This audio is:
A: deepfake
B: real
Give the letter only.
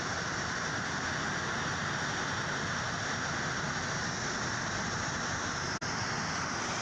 B